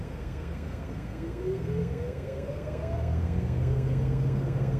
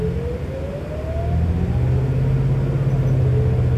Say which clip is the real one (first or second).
second